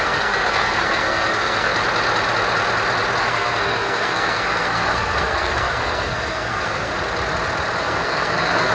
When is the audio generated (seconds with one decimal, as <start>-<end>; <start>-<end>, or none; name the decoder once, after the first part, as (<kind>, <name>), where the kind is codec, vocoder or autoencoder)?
0.0-1.7 (codec, SNAC); 3.2-6.9; 7.8-8.7